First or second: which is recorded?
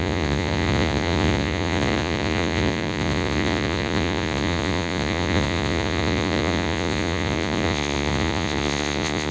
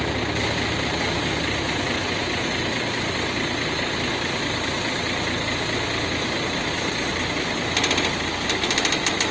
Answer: second